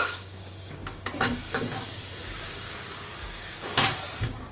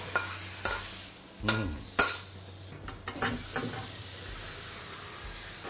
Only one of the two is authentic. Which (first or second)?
second